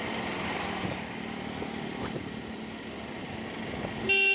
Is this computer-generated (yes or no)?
no